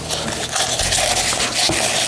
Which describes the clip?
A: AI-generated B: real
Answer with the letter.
B